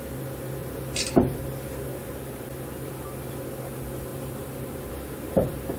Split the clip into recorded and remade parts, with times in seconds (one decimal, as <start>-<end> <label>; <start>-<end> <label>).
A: 0.0-0.6 recorded; 0.6-1.1 remade; 1.1-4.1 recorded; 4.1-4.9 remade; 4.9-5.8 recorded